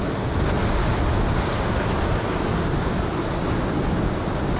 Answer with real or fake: real